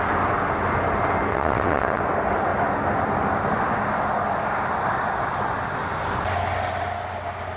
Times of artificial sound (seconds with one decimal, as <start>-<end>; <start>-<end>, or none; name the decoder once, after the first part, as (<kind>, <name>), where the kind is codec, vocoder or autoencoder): 1.3-2.0 (vocoder, WaveNeXt)